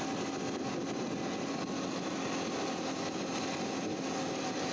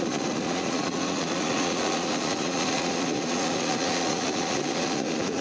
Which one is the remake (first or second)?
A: second